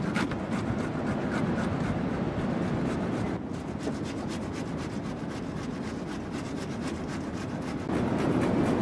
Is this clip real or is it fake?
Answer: real